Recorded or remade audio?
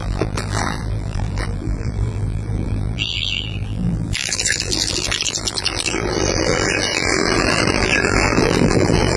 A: remade